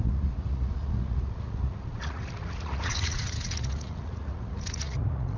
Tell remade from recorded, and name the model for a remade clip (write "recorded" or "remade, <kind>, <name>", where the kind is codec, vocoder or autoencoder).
remade, vocoder, Vocos